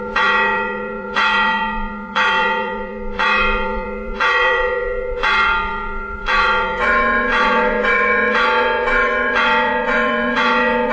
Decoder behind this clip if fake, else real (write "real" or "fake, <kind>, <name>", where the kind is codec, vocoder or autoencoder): fake, vocoder, Vocos